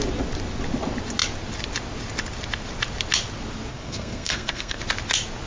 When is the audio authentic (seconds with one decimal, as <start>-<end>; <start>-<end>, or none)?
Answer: 0.0-3.7; 4.8-5.5